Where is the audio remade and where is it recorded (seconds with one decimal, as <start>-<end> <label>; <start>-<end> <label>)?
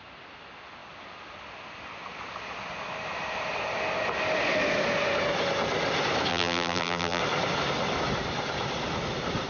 0.0-6.3 recorded; 6.3-7.2 remade; 7.2-9.5 recorded